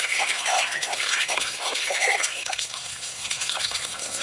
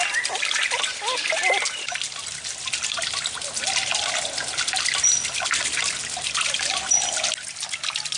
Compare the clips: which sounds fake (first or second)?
first